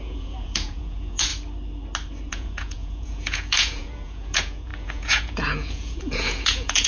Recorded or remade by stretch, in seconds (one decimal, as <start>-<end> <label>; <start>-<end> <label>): 0.0-1.3 remade; 1.3-2.3 recorded; 2.3-6.9 remade